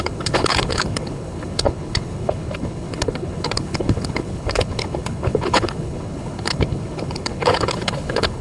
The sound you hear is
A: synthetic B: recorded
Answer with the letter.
A